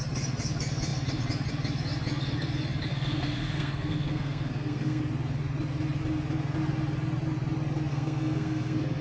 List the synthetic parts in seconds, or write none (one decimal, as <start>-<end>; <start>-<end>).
2.9-5.0; 7.9-9.0